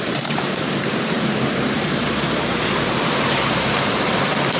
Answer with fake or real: fake